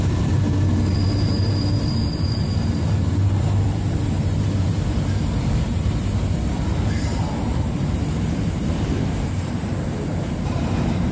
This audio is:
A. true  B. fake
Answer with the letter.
B